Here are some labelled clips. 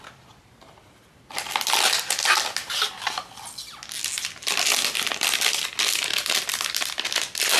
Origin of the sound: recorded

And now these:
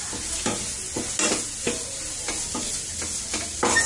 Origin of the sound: recorded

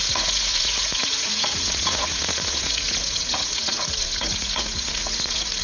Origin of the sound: remade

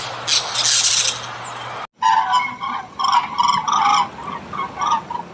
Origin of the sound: recorded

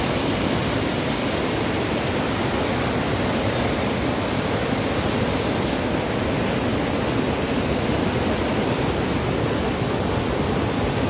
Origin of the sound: recorded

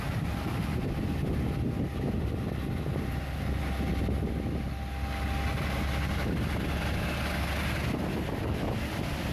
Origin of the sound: recorded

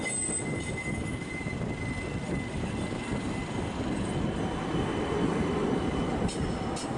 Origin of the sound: recorded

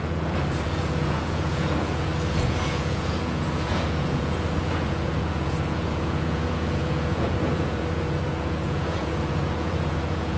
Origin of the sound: remade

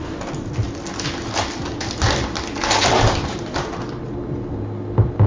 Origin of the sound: recorded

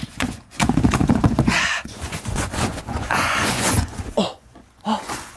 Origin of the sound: remade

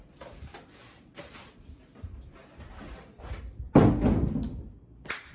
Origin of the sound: recorded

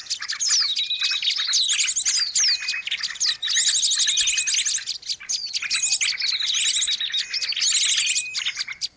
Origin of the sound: recorded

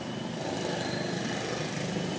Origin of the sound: recorded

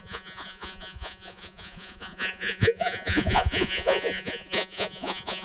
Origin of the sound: remade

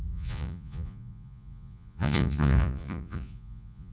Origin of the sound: remade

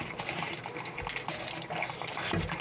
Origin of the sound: recorded